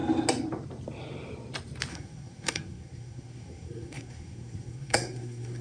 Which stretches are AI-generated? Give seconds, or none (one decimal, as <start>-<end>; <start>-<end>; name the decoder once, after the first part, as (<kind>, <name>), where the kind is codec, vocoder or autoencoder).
1.9-5.6 (codec, SNAC)